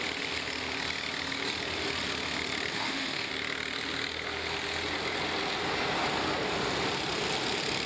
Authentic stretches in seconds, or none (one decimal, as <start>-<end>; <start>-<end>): 0.0-2.7; 3.3-7.9